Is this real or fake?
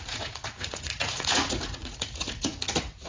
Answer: fake